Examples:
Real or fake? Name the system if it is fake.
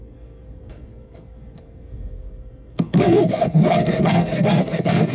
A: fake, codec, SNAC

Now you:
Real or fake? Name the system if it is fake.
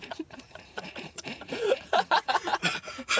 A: fake, vocoder, Vocos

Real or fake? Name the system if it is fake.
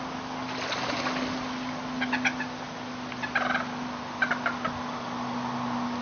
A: real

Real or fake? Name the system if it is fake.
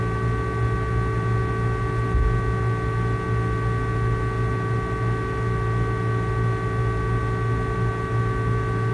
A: real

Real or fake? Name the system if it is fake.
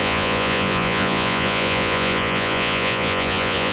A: fake, vocoder, Vocos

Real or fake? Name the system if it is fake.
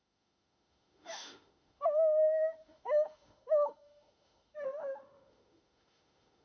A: fake, autoencoder, DAC-VAE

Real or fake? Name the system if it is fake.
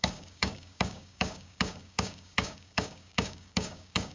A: fake, codec, DAC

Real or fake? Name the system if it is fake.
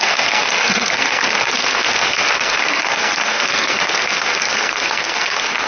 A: fake, codec, SNAC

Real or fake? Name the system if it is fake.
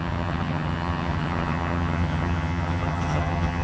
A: fake, vocoder, HiFi-GAN